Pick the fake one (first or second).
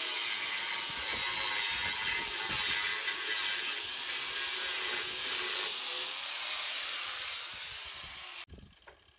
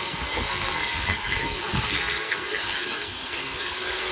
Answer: second